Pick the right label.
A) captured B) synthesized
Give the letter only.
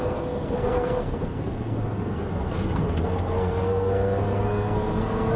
B